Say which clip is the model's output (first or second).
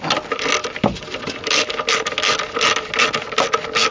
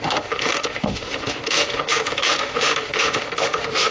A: second